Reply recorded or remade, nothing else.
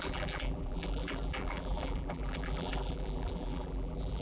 remade